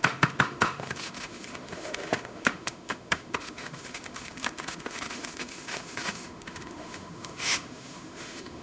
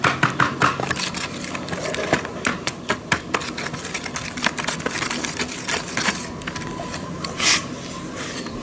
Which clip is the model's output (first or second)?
first